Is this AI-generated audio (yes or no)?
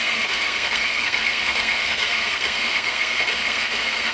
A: yes